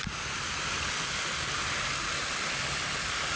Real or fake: real